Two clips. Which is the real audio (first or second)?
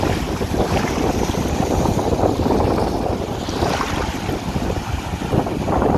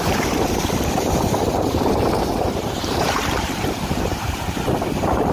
first